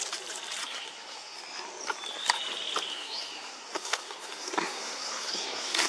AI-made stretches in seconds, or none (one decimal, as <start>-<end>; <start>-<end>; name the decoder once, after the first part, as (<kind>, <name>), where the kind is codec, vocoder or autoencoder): 0.6-1.4 (codec, SNAC); 2.9-5.9